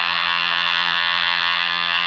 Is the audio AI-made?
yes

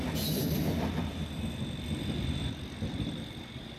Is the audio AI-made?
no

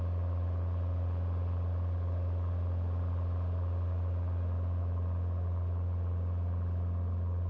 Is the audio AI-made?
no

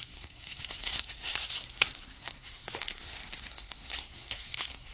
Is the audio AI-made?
yes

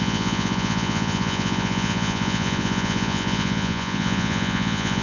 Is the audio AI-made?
yes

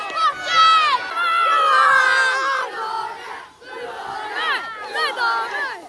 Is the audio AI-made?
no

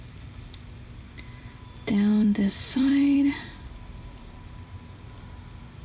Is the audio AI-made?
yes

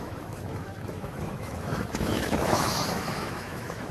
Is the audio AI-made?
yes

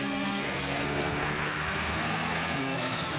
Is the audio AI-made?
yes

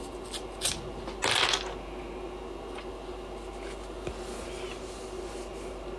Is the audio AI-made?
no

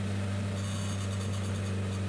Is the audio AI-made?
no